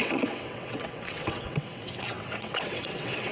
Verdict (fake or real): fake